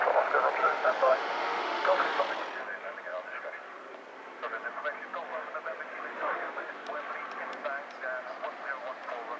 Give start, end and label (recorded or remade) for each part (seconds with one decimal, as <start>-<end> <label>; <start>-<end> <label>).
0.0-0.6 recorded; 0.6-2.2 remade; 2.2-6.1 recorded; 6.1-6.7 remade; 6.7-9.4 recorded